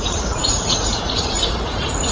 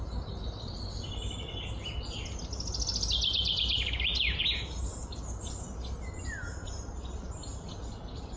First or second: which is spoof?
first